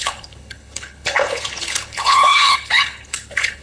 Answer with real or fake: fake